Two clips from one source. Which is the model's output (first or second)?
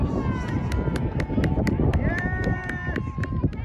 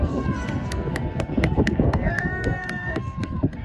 second